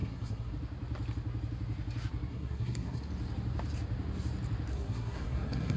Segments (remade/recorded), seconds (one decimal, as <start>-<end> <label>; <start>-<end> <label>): 0.0-0.5 remade; 0.5-2.3 recorded; 2.3-3.0 remade; 3.0-4.7 recorded; 4.7-5.8 remade